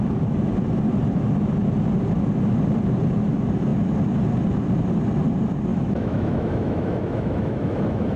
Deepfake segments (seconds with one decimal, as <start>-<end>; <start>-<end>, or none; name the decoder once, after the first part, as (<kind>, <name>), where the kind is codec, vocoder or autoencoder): 5.7-8.2 (autoencoder, DAC-VAE)